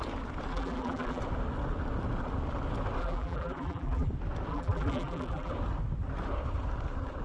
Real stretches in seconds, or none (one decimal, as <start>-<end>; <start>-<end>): 0.0-0.5; 1.2-3.0; 4.1-4.5; 5.5-7.2